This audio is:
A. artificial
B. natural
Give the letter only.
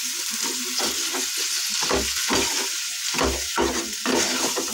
B